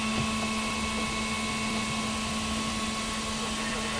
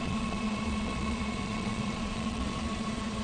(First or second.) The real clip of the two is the first